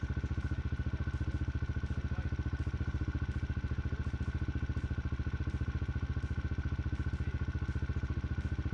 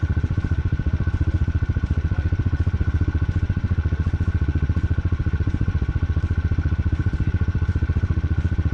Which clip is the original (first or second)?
first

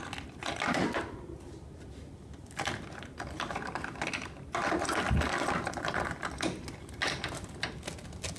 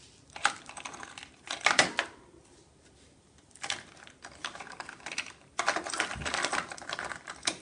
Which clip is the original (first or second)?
first